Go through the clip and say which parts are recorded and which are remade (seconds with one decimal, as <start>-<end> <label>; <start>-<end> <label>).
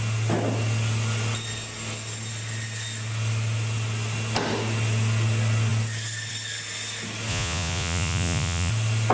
0.0-7.3 recorded; 7.3-8.7 remade; 8.7-9.1 recorded